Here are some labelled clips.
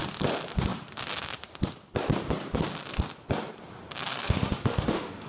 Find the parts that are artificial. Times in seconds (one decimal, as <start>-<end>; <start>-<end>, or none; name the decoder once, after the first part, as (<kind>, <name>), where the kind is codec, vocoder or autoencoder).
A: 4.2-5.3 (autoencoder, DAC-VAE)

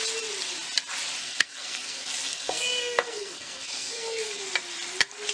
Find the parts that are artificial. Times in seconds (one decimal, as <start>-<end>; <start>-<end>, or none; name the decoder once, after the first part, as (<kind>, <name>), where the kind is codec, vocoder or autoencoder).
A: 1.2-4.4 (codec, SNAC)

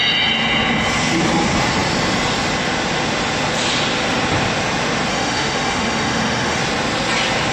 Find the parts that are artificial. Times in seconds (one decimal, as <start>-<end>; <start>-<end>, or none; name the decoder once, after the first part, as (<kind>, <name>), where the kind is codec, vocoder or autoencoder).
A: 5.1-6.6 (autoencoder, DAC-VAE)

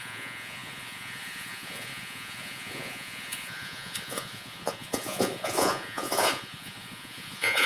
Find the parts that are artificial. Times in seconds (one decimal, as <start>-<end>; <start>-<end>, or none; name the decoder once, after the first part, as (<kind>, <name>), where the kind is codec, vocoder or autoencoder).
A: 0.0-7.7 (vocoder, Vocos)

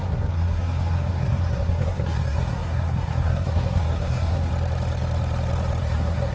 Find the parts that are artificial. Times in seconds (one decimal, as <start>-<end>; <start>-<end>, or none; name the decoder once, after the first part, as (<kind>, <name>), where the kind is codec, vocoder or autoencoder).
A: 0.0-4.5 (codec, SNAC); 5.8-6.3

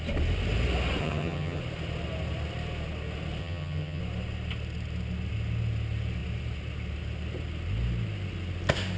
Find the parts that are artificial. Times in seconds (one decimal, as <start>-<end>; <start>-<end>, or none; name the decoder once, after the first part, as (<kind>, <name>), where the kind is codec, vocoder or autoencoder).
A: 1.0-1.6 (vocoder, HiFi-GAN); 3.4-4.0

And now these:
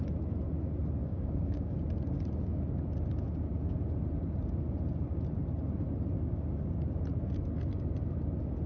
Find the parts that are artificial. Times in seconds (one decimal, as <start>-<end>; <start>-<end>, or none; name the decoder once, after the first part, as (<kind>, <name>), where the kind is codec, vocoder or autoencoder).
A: 1.0-1.7 (codec, DAC)

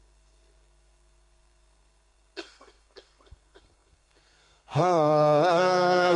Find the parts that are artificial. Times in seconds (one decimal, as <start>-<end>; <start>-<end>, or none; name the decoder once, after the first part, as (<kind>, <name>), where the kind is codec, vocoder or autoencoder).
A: 0.0-6.2 (codec, SNAC)